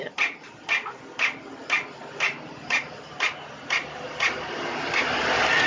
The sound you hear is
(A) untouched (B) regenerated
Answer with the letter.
A